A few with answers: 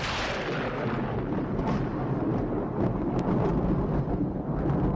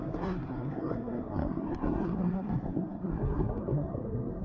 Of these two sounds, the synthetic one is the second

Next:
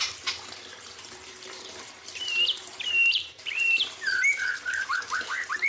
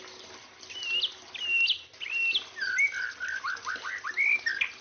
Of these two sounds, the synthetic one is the first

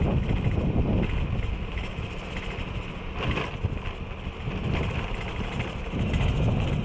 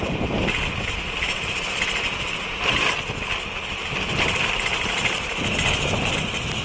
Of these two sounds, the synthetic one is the second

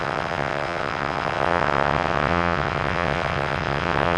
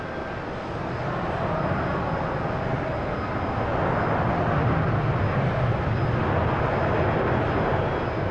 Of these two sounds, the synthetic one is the first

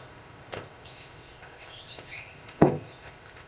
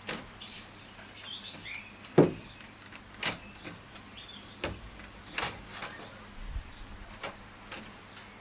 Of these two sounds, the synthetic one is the first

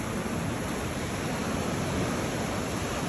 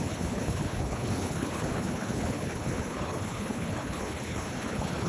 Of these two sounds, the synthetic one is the second